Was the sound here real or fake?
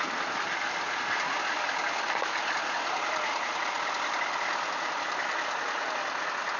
real